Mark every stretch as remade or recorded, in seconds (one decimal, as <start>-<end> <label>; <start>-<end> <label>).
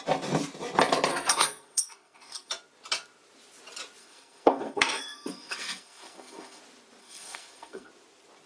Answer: 0.0-1.1 recorded; 1.1-2.5 remade; 2.5-4.0 recorded; 4.0-6.6 remade; 6.6-7.0 recorded; 7.0-7.9 remade; 7.9-8.5 recorded